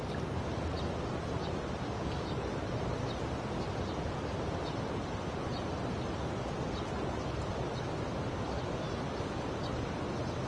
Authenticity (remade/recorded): recorded